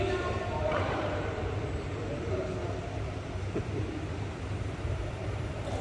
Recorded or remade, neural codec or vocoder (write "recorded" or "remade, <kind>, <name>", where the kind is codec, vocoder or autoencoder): remade, vocoder, BigVGAN v2